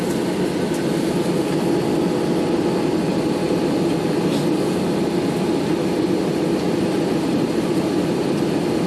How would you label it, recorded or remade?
recorded